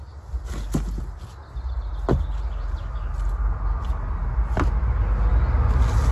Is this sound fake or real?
real